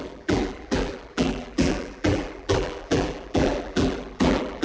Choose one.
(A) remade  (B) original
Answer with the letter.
A